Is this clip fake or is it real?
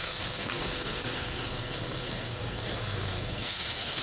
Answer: fake